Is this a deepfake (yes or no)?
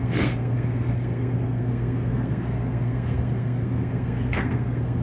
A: yes